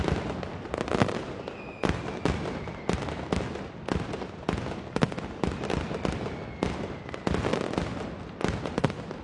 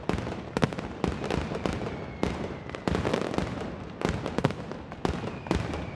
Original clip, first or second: first